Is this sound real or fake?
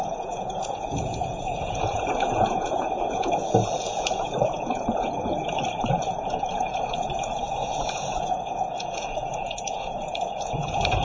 fake